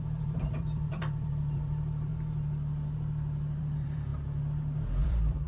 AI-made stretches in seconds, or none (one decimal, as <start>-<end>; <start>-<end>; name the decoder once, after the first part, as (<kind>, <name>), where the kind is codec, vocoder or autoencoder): 0.0-2.1 (vocoder, BigVGAN v2); 3.6-4.1; 5.0-5.5